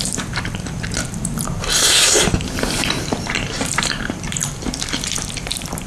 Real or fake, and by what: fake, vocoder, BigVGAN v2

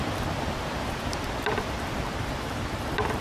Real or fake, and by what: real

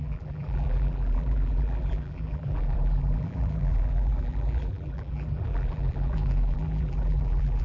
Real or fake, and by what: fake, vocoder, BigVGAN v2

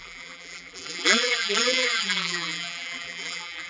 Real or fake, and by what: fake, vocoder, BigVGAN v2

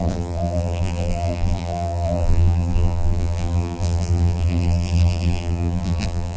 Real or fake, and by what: fake, vocoder, BigVGAN v2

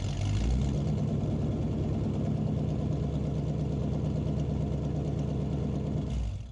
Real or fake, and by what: real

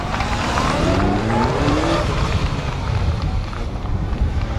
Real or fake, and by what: fake, vocoder, BigVGAN v2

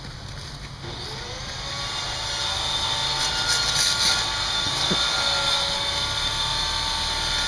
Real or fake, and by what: real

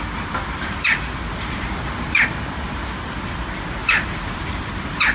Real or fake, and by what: fake, vocoder, BigVGAN v2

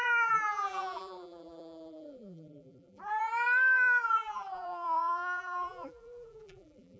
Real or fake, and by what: fake, vocoder, BigVGAN v2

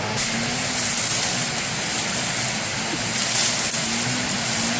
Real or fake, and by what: real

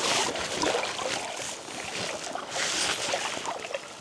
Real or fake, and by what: real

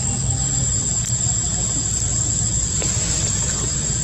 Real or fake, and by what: real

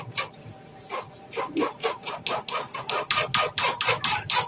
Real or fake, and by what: fake, vocoder, BigVGAN v2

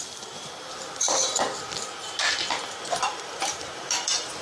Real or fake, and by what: fake, vocoder, BigVGAN v2